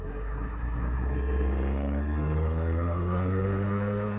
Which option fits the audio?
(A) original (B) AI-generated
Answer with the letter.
B